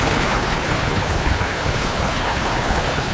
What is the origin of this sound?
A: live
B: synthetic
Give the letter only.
B